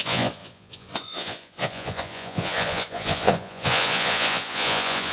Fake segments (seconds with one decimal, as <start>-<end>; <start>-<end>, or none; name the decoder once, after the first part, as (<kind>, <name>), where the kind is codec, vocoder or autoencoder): 0.0-5.1 (vocoder, Vocos)

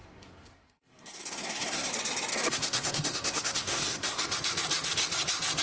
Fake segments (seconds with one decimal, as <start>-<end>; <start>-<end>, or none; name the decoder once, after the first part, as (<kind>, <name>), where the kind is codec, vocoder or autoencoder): 0.0-1.9 (codec, SNAC); 2.3-4.2

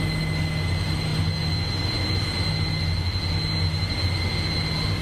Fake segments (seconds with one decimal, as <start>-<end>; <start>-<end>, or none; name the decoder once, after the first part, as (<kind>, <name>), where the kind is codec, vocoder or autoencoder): none

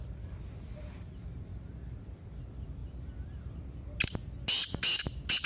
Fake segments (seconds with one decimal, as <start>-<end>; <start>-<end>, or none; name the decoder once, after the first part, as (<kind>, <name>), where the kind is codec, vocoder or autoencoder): none

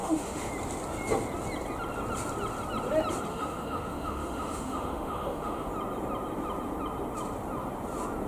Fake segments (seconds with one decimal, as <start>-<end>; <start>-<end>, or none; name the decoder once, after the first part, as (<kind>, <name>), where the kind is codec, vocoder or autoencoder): 0.0-0.5 (autoencoder, DAC-VAE); 3.3-5.7